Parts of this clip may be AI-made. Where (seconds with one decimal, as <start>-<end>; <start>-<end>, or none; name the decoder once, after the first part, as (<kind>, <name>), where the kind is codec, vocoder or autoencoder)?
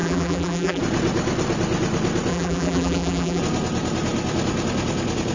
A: 0.0-0.8 (vocoder, BigVGAN v2); 2.3-3.4